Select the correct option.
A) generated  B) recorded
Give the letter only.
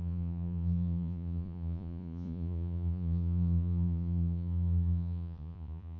A